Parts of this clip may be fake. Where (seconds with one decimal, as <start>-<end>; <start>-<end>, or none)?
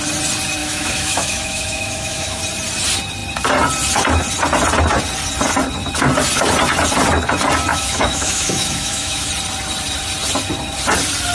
0.6-2.4; 7.7-9.3